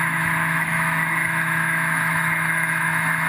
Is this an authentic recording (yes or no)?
no